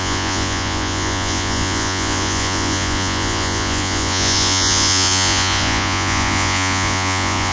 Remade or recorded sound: remade